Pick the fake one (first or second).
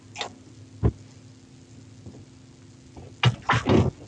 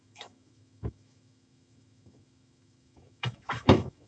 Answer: second